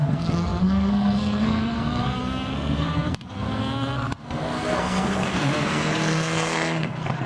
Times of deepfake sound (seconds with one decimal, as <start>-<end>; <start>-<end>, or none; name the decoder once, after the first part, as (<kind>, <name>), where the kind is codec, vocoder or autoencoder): 0.0-7.3 (codec, SNAC)